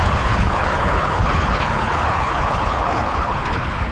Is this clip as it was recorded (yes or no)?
no